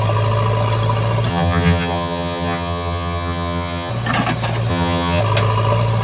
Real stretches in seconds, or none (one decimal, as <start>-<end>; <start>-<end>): 0.0-1.3; 3.9-4.7; 5.2-6.0

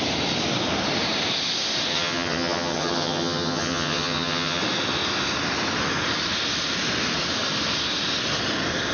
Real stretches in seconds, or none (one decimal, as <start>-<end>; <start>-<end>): 0.0-1.9; 4.6-8.9

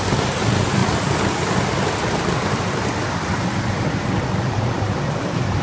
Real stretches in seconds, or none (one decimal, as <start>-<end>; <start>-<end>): 0.0-5.6

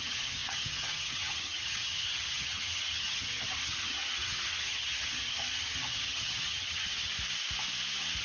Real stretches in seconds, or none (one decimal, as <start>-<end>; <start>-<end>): 7.1-8.2

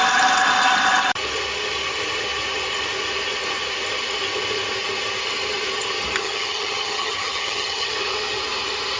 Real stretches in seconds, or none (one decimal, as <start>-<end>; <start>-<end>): 0.0-6.2; 7.9-9.0